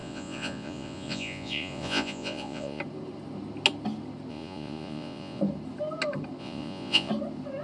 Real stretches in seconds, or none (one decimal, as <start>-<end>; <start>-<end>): 2.8-4.3; 5.4-6.4; 7.1-7.6